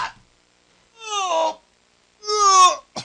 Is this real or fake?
real